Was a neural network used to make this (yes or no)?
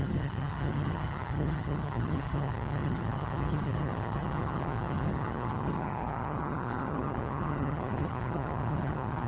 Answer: yes